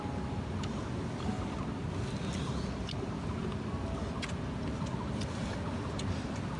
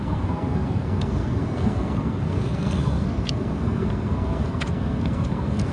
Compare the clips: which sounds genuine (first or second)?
first